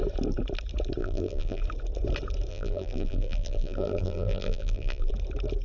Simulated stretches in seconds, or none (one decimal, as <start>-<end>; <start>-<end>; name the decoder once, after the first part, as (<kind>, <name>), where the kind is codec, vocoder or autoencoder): 1.0-1.6 (vocoder, BigVGAN v2); 2.5-5.1